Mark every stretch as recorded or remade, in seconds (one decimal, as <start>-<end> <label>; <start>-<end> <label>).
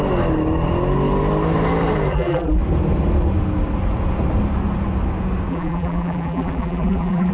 0.0-2.1 recorded; 2.1-2.6 remade; 2.6-5.5 recorded; 5.5-7.3 remade